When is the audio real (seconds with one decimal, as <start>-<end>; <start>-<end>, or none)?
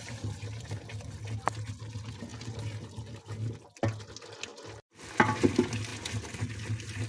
0.0-7.1